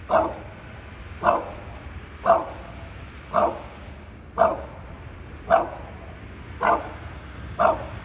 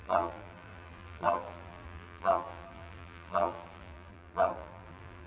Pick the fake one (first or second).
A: second